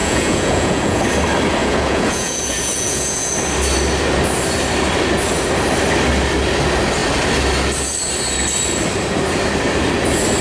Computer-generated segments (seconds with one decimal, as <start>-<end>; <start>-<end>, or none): 0.0-1.0; 1.6-3.3